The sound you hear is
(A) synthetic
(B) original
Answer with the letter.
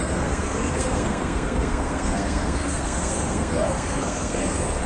A